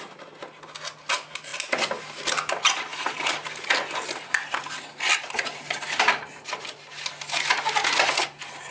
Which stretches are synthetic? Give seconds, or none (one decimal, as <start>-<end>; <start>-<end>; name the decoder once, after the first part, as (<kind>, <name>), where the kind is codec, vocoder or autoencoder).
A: none